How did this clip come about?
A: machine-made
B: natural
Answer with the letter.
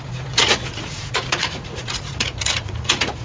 A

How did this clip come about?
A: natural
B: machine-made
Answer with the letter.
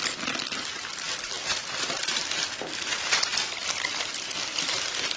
B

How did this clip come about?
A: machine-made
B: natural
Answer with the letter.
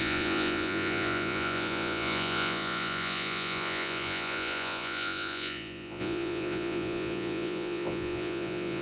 A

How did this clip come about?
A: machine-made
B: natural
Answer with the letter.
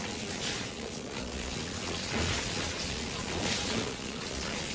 A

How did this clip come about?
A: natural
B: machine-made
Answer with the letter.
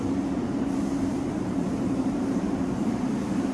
B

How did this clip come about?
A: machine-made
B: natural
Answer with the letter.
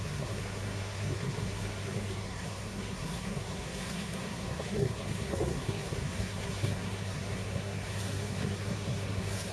A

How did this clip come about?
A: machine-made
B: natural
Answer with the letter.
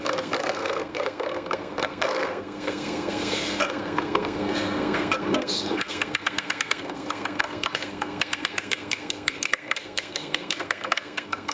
A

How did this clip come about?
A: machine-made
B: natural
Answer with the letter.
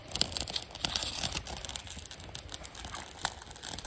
B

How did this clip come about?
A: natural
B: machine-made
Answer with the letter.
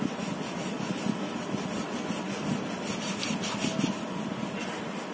A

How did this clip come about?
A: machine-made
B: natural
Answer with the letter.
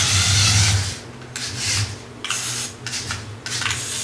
B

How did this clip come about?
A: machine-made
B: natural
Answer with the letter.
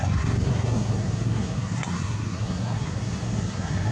A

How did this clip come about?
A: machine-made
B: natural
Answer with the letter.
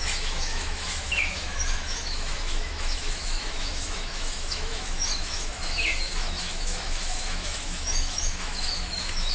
A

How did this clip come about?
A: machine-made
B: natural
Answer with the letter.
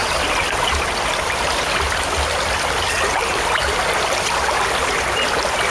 B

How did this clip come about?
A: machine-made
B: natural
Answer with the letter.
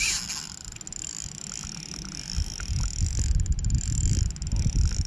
B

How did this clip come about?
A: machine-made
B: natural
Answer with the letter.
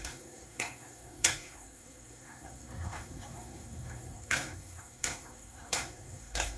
A